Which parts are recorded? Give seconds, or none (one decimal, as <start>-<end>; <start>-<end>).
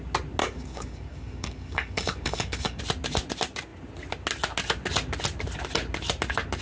0.0-0.4; 2.8-6.6